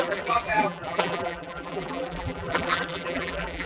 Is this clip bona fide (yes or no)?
no